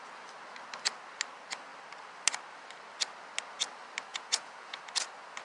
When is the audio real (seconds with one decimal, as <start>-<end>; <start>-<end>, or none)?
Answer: 0.0-4.1; 4.8-5.4